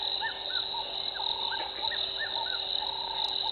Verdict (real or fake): real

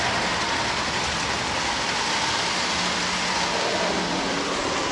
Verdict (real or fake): real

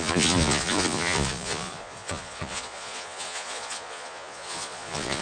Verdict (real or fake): fake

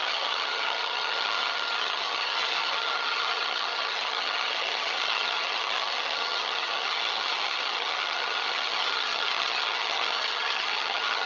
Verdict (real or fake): fake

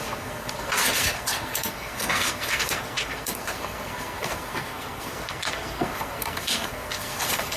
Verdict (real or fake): fake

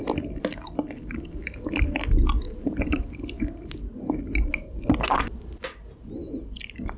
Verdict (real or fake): real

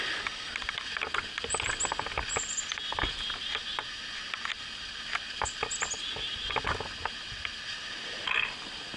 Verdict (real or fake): real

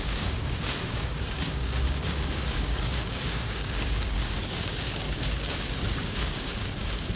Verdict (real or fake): fake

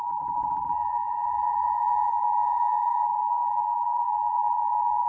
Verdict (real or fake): fake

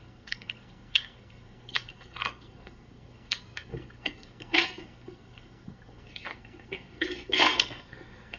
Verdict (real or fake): fake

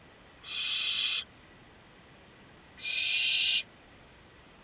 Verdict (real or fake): real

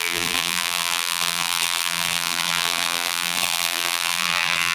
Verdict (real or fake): fake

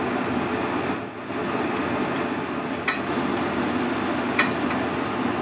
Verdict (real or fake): real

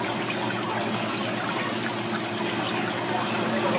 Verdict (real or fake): real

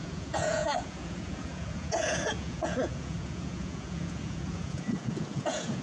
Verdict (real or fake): fake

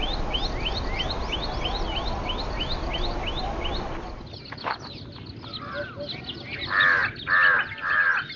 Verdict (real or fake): real